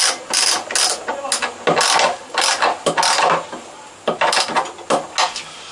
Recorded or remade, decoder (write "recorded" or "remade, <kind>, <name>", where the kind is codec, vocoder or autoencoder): recorded